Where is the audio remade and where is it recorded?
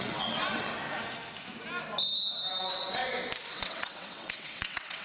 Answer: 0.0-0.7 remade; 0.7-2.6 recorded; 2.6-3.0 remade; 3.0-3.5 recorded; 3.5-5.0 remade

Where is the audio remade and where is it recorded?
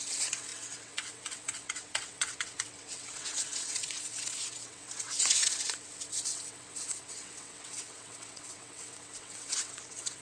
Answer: 0.0-10.2 remade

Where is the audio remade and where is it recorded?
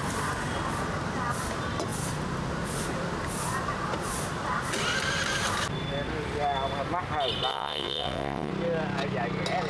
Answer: 0.0-7.5 recorded; 7.5-8.5 remade; 8.5-9.7 recorded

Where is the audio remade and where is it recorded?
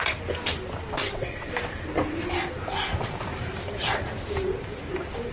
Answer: 0.0-1.0 recorded; 1.0-1.5 remade; 1.5-5.3 recorded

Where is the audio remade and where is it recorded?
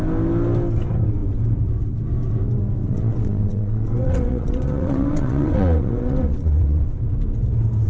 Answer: 0.0-2.8 recorded; 2.8-6.8 remade; 6.8-7.9 recorded